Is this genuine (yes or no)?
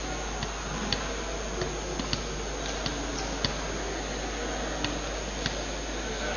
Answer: yes